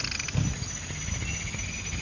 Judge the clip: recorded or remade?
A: recorded